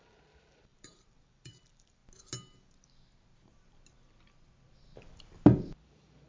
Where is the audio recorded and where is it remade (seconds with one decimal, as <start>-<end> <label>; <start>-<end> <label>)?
0.0-2.0 remade; 2.0-5.8 recorded; 5.8-6.3 remade